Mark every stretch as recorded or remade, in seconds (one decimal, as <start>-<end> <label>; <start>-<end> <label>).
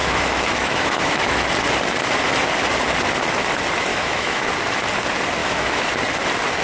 0.0-1.5 remade; 1.5-3.9 recorded; 3.9-4.5 remade; 4.5-5.4 recorded; 5.4-5.9 remade; 5.9-6.6 recorded